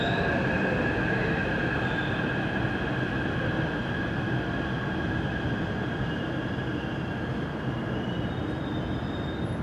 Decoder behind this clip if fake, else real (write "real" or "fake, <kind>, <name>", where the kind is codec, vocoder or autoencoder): real